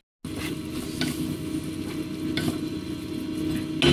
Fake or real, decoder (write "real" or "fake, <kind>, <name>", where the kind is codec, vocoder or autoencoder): real